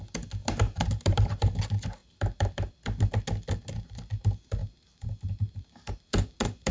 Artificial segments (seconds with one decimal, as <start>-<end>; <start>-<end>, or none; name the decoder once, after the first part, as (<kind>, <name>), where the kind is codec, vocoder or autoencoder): 0.4-1.6 (vocoder, BigVGAN v2); 2.0-2.8; 4.6-6.7